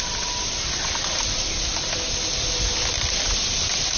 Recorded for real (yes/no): yes